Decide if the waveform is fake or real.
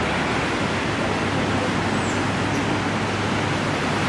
real